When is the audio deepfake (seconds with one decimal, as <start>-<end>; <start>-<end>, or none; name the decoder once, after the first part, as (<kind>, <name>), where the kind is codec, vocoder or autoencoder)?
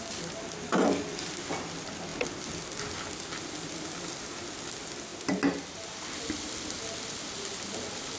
none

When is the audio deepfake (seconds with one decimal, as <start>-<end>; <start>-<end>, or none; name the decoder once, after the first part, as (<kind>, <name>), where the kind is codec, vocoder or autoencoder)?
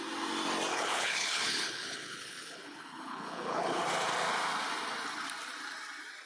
0.7-3.8 (codec, HILCodec)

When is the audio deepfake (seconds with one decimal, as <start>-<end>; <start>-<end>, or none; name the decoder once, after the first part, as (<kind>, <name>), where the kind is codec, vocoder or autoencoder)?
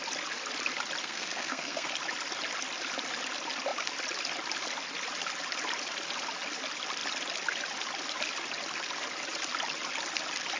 1.0-1.9 (codec, SNAC)